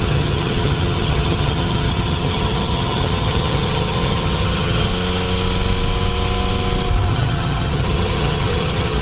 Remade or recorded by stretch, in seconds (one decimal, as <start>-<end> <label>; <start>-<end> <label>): 0.0-4.9 remade; 4.9-7.1 recorded; 7.1-9.0 remade